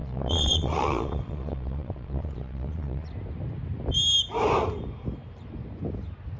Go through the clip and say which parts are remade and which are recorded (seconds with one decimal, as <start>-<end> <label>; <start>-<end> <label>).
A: 0.0-3.1 remade; 3.1-6.4 recorded